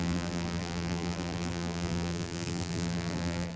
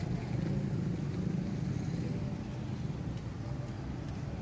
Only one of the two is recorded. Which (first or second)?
second